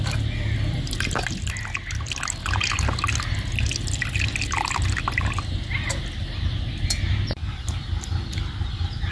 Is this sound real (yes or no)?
yes